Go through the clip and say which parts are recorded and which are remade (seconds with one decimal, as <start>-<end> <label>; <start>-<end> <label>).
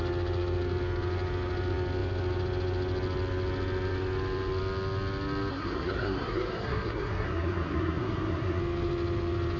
0.0-5.5 recorded; 5.5-8.6 remade; 8.6-9.6 recorded